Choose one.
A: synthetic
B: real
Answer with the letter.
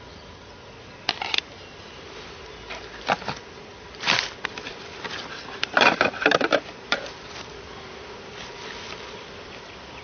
B